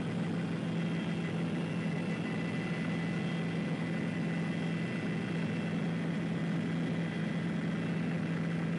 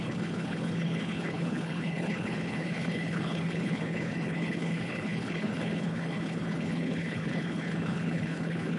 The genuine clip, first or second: first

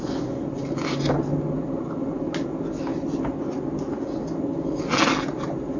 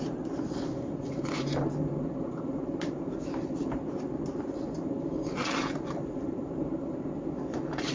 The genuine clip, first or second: first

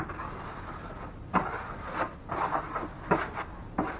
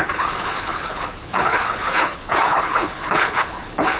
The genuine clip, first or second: first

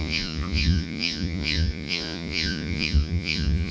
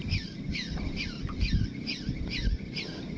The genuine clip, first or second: second